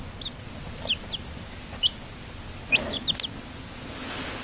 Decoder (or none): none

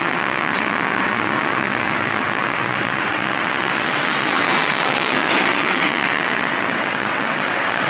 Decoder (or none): vocoder, WaveNeXt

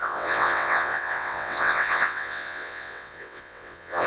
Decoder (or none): vocoder, WaveNeXt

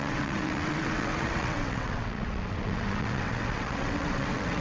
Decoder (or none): vocoder, WaveNeXt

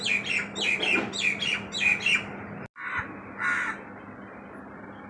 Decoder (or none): none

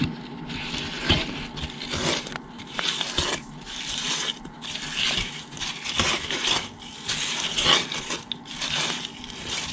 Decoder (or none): none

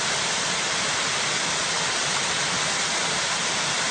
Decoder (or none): none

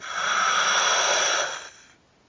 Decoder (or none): none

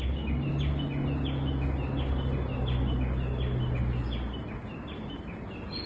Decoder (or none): none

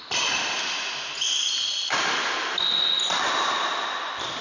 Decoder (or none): none